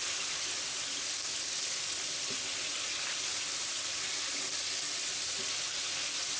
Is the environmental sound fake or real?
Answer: real